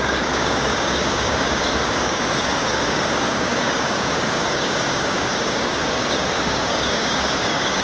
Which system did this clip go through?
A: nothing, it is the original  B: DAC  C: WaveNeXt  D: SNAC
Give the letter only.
B